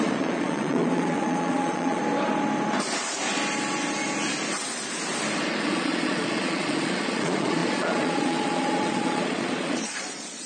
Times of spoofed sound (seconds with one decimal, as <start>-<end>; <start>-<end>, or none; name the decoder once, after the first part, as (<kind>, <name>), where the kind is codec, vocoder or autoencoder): 0.0-2.0 (vocoder, Vocos); 5.6-10.5